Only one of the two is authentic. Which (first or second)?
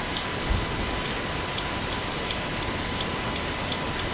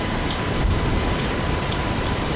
first